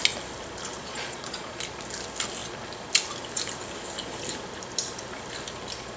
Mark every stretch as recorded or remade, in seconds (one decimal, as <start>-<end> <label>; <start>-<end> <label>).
0.0-0.8 recorded; 0.8-1.6 remade; 1.6-6.0 recorded